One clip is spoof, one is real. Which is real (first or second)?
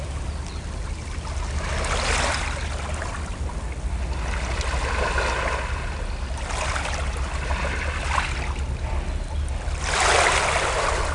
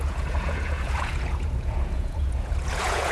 first